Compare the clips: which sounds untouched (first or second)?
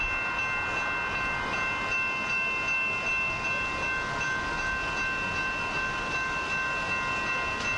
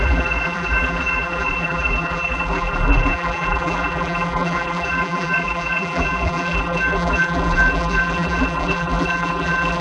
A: first